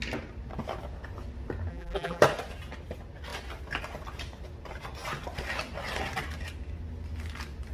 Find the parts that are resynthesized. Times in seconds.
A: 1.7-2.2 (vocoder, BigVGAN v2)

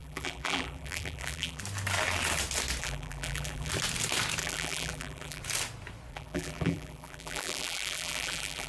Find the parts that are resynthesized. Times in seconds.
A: 0.0-1.6 (vocoder, BigVGAN v2); 2.8-3.7; 4.4-5.4; 6.1-8.7